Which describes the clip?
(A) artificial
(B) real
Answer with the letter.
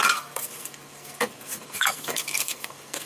A